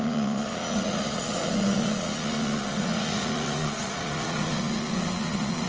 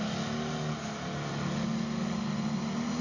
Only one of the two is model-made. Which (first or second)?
first